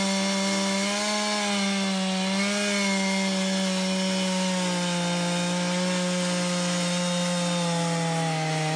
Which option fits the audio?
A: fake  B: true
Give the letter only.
B